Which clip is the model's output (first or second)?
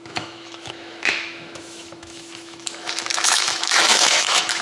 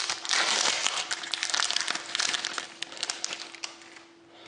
first